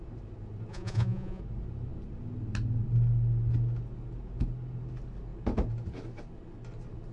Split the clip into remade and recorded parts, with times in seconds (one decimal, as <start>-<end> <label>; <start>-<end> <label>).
0.0-0.7 recorded; 0.7-1.4 remade; 1.4-7.1 recorded